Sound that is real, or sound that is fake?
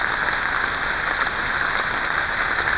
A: real